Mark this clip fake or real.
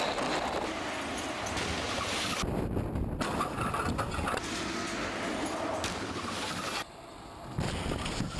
real